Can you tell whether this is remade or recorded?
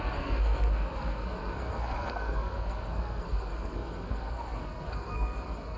remade